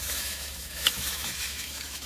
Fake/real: fake